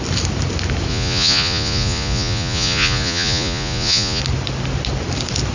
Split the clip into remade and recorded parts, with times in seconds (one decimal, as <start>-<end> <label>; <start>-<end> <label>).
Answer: 0.0-0.9 recorded; 0.9-4.2 remade; 4.2-5.5 recorded